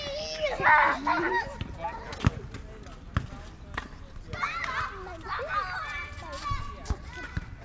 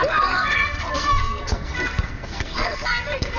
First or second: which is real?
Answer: first